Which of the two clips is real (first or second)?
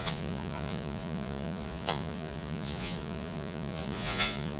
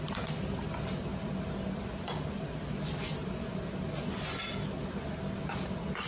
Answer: second